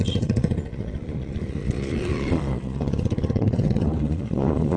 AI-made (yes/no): yes